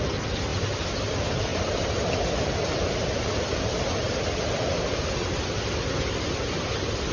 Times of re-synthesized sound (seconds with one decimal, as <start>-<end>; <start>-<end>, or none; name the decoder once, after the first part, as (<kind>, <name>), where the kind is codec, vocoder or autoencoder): 0.5-1.1 (vocoder, BigVGAN v2); 1.5-4.6